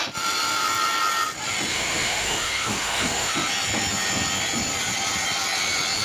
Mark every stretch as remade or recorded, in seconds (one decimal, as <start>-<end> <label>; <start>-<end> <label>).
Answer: 0.0-1.7 recorded; 1.7-3.3 remade; 3.3-6.0 recorded